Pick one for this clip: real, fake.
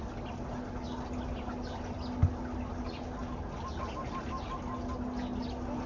real